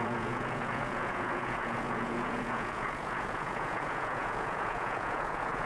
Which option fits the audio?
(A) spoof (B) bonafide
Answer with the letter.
A